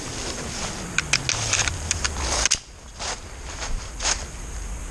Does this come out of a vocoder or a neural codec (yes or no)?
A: no